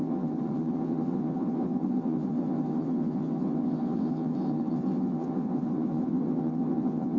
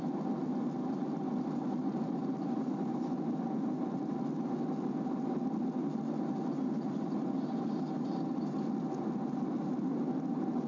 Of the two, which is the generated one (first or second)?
first